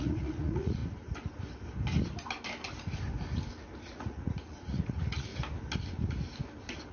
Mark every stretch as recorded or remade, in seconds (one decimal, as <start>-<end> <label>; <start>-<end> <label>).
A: 0.0-0.8 remade; 0.8-3.8 recorded; 3.8-5.3 remade; 5.3-6.9 recorded

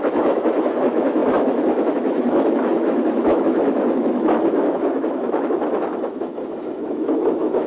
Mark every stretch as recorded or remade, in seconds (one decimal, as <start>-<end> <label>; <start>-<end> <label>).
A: 0.0-7.7 remade

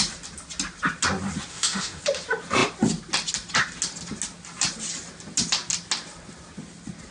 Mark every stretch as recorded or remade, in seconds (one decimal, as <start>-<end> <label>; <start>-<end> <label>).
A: 0.0-1.5 recorded; 1.5-2.0 remade; 2.0-7.1 recorded

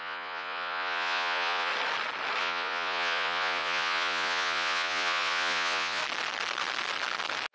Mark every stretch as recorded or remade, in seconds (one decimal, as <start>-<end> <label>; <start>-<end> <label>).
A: 0.0-1.7 remade; 1.7-2.4 recorded; 2.4-6.0 remade; 6.0-7.5 recorded

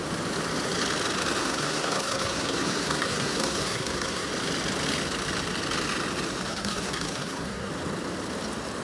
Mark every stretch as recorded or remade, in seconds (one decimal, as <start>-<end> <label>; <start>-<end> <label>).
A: 0.0-1.4 recorded; 1.4-4.3 remade; 4.3-6.5 recorded; 6.5-7.7 remade; 7.7-8.8 recorded